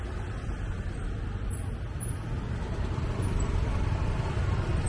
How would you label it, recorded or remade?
recorded